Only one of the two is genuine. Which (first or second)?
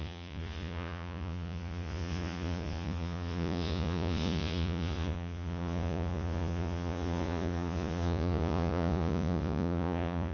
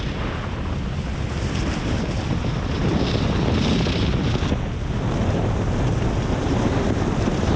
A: second